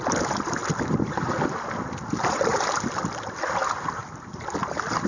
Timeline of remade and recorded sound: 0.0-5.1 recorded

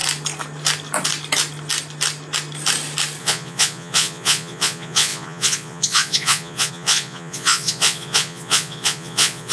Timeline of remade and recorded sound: 0.0-3.2 recorded; 3.2-9.5 remade

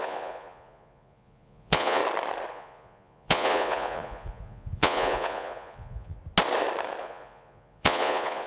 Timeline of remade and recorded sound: 0.0-2.0 remade; 2.0-2.5 recorded; 2.5-6.2 remade; 6.2-7.0 recorded; 7.0-8.5 remade